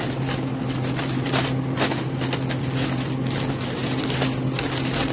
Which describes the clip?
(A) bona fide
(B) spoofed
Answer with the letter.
A